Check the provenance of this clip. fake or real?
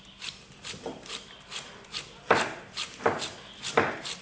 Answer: real